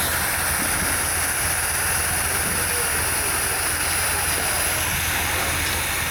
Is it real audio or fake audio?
real